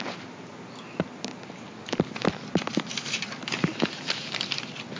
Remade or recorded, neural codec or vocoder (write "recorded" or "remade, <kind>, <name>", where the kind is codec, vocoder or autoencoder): recorded